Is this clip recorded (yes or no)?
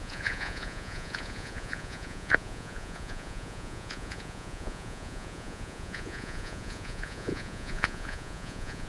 no